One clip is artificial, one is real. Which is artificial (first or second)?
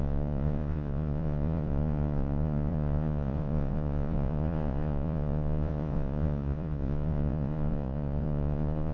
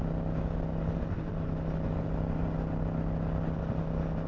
first